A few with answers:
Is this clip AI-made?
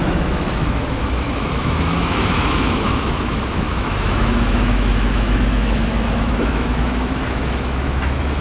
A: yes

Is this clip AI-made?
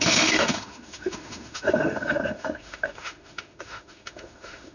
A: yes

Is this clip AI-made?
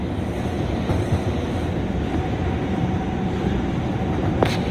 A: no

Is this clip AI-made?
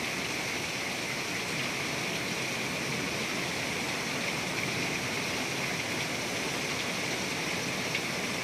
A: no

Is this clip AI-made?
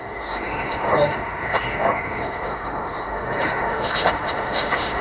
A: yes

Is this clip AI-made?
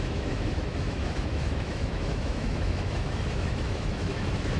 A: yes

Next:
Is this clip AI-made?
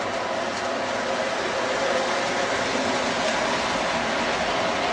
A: no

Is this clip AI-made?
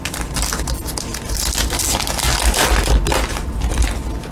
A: no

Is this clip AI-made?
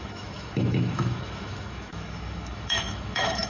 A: yes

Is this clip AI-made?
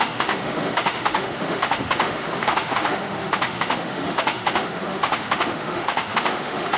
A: yes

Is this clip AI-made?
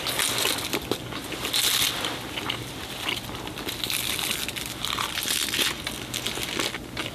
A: no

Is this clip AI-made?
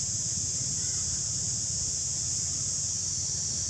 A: no